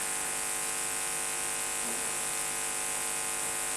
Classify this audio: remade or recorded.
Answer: recorded